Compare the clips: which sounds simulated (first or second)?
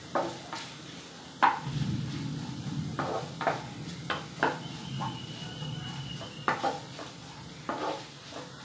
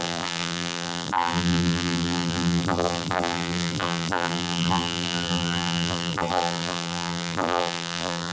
second